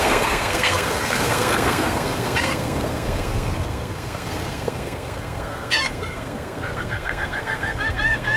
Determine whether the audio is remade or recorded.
remade